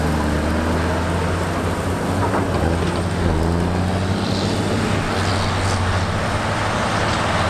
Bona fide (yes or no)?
yes